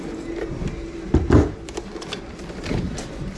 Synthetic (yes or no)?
yes